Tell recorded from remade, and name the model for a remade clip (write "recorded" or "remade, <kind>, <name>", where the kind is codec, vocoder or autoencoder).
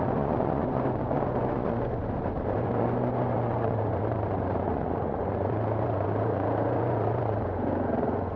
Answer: remade, vocoder, Vocos